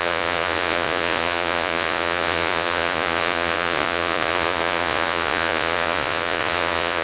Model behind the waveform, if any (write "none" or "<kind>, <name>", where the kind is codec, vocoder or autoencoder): vocoder, Vocos